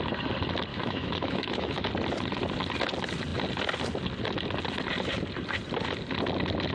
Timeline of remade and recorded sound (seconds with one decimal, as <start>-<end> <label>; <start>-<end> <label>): 0.0-0.7 recorded; 0.7-1.9 remade; 1.9-6.7 recorded